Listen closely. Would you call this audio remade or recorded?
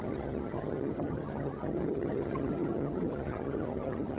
remade